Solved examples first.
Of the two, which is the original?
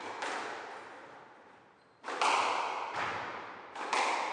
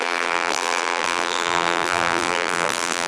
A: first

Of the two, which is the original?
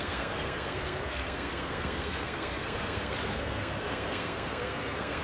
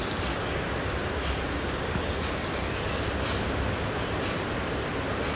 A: second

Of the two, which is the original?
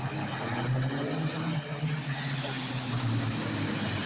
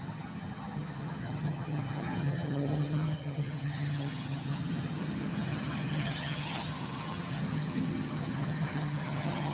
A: first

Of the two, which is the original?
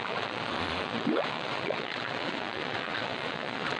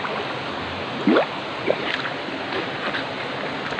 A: second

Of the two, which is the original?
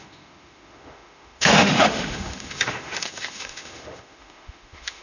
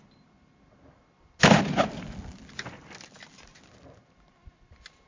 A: second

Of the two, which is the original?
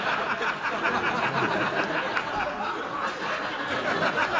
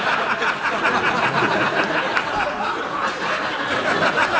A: first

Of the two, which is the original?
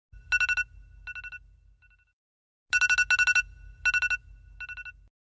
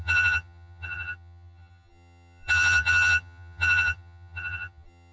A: first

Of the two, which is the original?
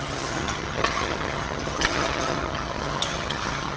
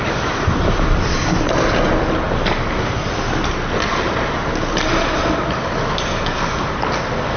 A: second